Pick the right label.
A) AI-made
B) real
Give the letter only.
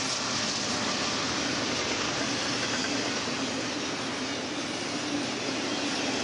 B